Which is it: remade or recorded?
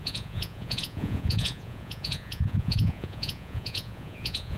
remade